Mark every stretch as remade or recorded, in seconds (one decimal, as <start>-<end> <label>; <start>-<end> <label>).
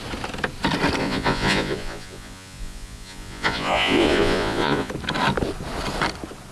0.0-1.0 recorded; 1.0-4.9 remade; 4.9-6.5 recorded